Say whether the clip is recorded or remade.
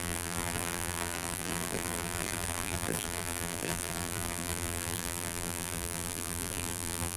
remade